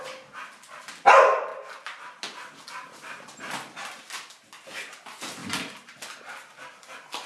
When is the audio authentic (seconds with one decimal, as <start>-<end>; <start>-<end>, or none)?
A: 0.0-5.4